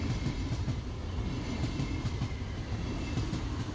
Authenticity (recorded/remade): remade